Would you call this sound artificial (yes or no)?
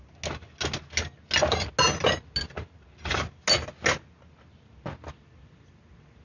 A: no